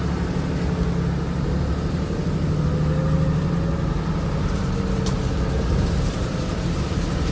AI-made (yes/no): no